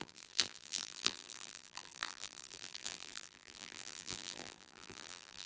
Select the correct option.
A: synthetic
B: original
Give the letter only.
A